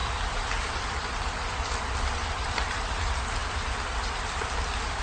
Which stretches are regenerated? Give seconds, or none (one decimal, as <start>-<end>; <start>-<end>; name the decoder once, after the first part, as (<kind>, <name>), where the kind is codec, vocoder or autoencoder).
none